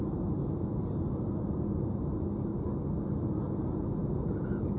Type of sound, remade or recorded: recorded